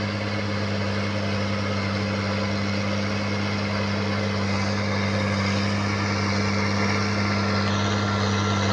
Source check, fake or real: real